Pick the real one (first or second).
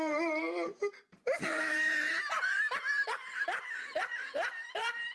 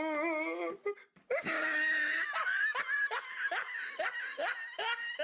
second